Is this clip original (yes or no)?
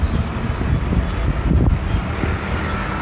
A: yes